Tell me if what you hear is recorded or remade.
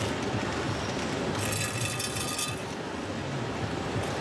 recorded